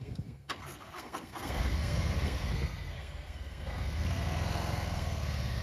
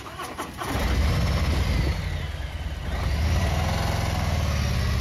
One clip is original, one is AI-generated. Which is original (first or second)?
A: second